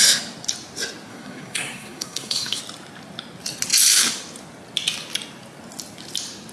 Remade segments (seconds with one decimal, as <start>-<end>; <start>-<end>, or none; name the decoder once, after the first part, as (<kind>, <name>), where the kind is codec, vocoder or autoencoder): 1.1-2.6 (codec, SNAC)